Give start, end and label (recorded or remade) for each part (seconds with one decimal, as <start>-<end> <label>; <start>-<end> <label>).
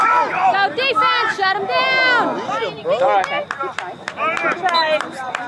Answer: 0.0-5.5 recorded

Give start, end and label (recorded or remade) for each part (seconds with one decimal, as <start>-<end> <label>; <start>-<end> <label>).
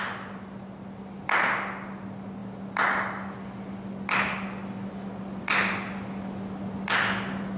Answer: 0.0-7.6 recorded